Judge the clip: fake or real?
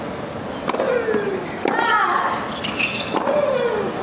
real